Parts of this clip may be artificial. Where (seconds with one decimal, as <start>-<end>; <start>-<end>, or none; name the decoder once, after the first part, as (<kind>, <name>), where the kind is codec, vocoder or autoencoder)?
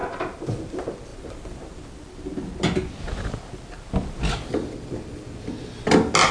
none